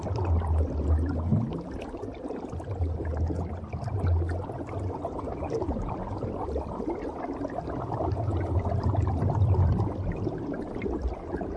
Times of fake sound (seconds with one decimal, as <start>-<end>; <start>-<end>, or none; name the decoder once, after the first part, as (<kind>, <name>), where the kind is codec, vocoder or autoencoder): none